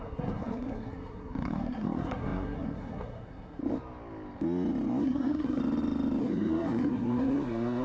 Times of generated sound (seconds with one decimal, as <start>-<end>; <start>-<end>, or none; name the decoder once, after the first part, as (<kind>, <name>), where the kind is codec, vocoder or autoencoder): 0.0-3.6 (codec, SNAC); 5.0-5.6; 6.2-7.8